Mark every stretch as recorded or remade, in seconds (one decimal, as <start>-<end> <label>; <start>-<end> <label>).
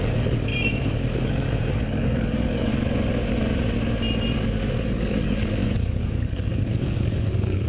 0.0-0.5 remade; 0.5-1.2 recorded; 1.2-2.7 remade; 2.7-4.8 recorded; 4.8-7.7 remade